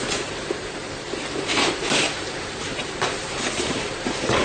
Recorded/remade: remade